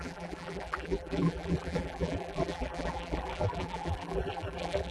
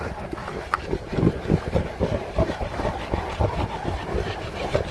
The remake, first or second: first